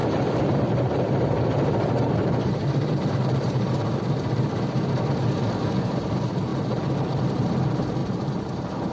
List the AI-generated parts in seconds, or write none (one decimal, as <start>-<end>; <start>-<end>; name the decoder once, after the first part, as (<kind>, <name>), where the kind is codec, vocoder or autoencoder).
0.0-4.0 (vocoder, BigVGAN v2); 6.5-7.6; 8.0-8.9